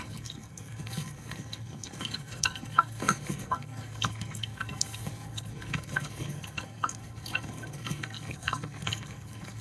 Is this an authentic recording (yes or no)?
no